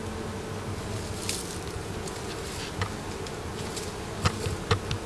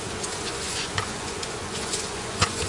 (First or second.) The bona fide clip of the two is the first